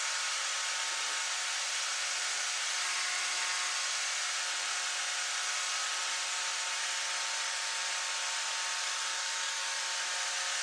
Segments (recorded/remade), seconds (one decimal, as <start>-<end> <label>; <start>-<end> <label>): 0.0-9.1 recorded; 9.1-9.8 remade; 9.8-10.6 recorded